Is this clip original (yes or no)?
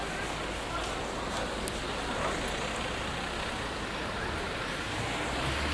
yes